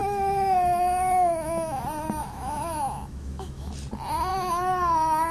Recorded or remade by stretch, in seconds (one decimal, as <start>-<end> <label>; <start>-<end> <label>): 0.0-1.8 remade; 1.8-2.2 recorded; 2.2-3.7 remade; 3.7-4.3 recorded; 4.3-5.3 remade